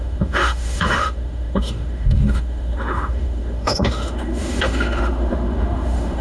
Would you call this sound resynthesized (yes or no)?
yes